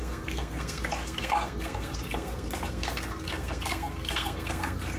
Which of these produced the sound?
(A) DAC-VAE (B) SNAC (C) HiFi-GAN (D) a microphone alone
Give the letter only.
B